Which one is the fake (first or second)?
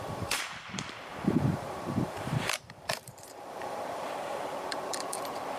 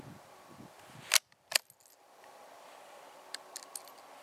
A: first